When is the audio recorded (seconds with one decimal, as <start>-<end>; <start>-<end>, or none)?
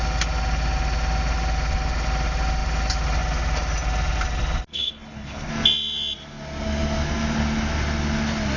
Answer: 0.0-4.7; 5.5-8.6